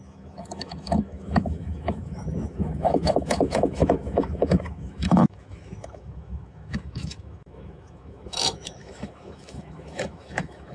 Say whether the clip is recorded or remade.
remade